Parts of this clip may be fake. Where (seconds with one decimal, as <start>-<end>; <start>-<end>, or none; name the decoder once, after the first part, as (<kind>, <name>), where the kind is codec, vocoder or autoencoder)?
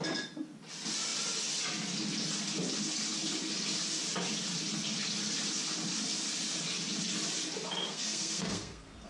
7.9-9.1 (codec, SNAC)